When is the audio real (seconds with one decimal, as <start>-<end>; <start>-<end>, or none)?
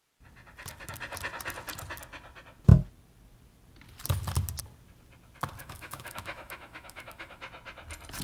0.0-5.6; 7.4-8.2